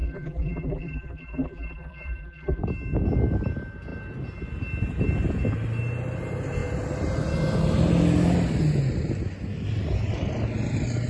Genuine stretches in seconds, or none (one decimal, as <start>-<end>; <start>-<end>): 2.6-11.1

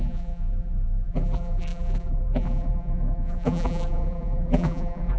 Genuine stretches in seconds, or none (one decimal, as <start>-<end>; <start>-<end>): none

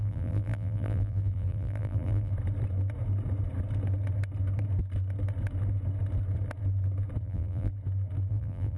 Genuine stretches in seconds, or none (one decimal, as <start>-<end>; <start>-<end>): 2.3-7.2; 7.7-8.3

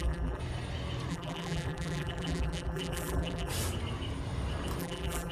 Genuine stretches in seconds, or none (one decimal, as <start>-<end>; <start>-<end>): 0.4-1.1; 3.5-4.8

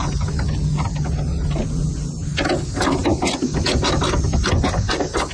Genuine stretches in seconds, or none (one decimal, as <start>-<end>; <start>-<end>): 0.0-5.3

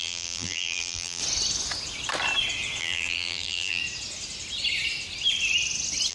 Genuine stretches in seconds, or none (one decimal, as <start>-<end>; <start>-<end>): 1.2-2.8; 3.8-6.1

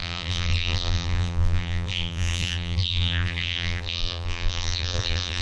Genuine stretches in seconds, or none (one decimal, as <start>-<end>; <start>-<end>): none